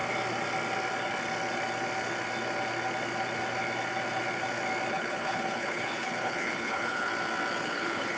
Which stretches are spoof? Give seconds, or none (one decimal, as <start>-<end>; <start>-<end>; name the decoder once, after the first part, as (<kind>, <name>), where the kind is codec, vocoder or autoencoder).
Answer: 4.9-7.1 (codec, HILCodec); 7.6-8.2

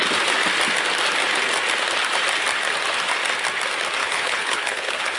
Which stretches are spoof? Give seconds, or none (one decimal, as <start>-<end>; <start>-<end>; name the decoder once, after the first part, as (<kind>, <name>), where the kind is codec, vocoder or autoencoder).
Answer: 4.0-5.2 (codec, HILCodec)

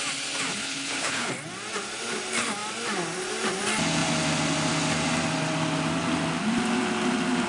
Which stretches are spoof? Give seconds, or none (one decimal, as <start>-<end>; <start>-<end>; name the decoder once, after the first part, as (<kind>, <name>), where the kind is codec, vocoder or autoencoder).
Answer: 0.5-1.3 (codec, HILCodec)

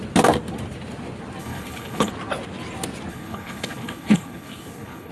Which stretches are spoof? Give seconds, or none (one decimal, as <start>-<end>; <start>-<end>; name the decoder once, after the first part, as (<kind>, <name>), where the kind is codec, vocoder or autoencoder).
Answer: 1.4-2.1 (codec, HILCodec); 3.1-5.1